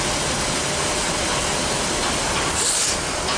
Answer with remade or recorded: recorded